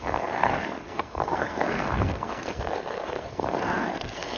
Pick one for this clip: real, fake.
fake